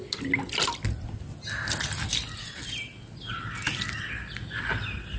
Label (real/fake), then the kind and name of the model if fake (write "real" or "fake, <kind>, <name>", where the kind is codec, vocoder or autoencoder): real